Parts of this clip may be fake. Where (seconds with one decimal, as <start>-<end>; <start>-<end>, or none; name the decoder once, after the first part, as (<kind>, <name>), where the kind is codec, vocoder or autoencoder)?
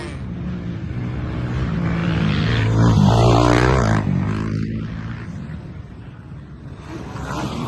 2.0-2.5 (vocoder, BigVGAN v2)